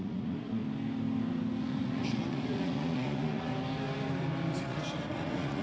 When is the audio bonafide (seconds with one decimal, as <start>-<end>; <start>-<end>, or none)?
0.6-1.6; 3.5-4.6